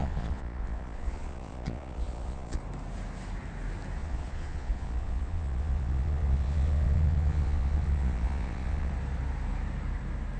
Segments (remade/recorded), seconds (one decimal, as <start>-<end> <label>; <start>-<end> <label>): 0.0-2.6 remade; 2.6-4.0 recorded; 4.0-8.9 remade; 8.9-10.4 recorded